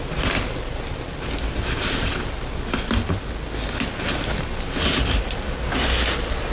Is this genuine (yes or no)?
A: yes